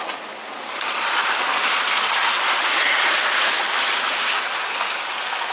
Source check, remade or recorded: recorded